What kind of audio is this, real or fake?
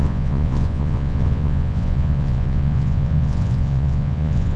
fake